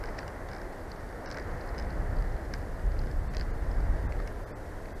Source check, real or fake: real